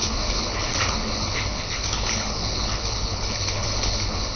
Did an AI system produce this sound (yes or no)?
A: yes